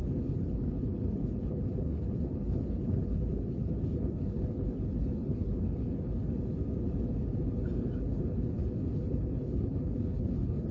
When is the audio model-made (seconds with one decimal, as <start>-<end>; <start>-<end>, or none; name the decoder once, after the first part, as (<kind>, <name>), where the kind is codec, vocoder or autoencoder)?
0.0-6.6 (codec, HILCodec); 8.0-10.7